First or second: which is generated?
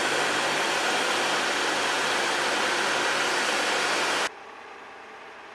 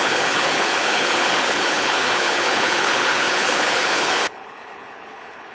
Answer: second